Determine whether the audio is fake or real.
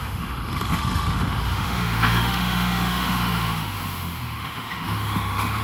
fake